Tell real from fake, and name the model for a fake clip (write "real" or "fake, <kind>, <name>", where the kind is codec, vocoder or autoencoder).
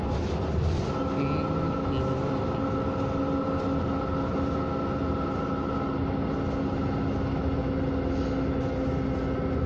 real